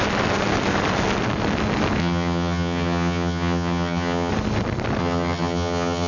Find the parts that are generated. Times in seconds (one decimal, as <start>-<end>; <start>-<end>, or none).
2.0-4.3; 5.0-6.1